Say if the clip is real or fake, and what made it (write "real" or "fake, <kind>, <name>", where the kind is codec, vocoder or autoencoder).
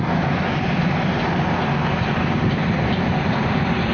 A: real